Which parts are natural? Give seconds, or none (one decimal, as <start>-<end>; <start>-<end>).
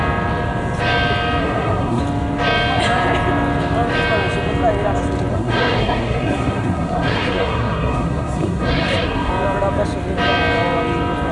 0.0-1.4; 2.0-5.3; 9.3-11.3